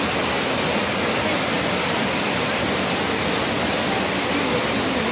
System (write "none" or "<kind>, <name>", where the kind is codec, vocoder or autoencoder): none